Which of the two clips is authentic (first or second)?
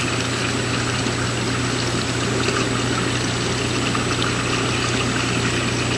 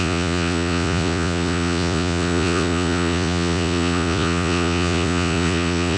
first